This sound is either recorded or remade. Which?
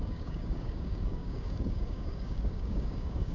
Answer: remade